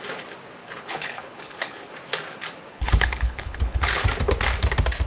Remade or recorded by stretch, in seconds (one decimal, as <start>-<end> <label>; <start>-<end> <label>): 0.0-0.6 recorded; 0.6-1.9 remade; 1.9-2.7 recorded; 2.7-4.0 remade; 4.0-5.1 recorded